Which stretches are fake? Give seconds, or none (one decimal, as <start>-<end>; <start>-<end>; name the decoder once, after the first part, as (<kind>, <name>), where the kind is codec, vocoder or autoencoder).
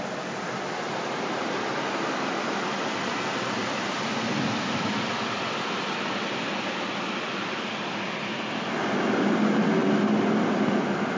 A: none